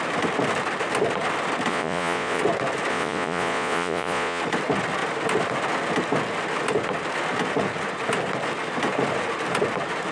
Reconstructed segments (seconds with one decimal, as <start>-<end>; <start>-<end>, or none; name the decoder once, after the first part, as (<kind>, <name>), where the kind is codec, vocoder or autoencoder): 1.7-2.4 (vocoder, Vocos); 2.9-4.4